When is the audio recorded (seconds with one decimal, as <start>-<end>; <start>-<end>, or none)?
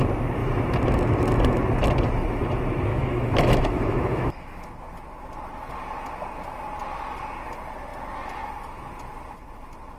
0.0-2.9; 4.7-10.0